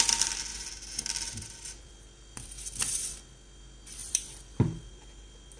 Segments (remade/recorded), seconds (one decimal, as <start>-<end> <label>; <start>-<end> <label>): 0.0-0.5 recorded; 0.5-2.8 remade; 2.8-4.0 recorded; 4.0-4.9 remade; 4.9-5.6 recorded